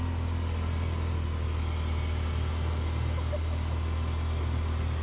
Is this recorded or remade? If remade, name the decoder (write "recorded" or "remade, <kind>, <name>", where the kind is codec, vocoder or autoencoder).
recorded